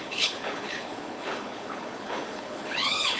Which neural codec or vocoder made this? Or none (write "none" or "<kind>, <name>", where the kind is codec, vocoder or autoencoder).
codec, HILCodec